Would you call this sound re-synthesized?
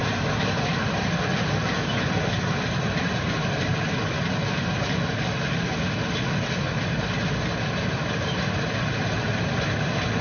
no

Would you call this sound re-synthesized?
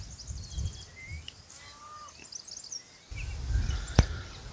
no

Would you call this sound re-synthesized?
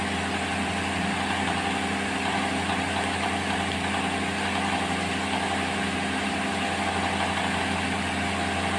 no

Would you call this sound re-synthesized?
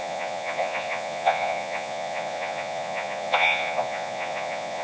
yes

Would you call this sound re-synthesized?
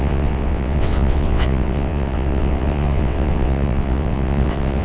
yes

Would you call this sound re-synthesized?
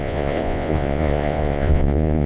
yes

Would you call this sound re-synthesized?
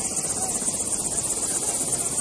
no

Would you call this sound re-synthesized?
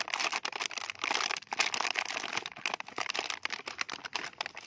no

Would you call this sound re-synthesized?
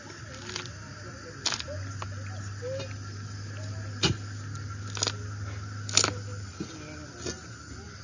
no